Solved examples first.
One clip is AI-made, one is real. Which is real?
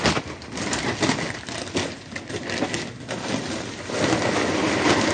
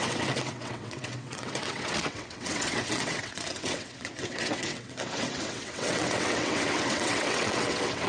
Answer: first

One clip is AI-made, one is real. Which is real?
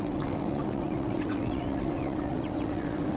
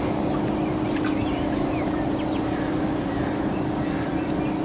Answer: second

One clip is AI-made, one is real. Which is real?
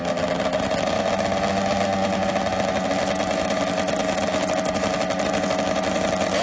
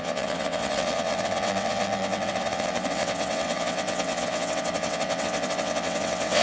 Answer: first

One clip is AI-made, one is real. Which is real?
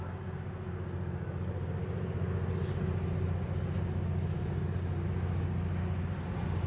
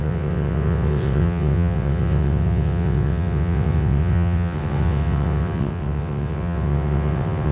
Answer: first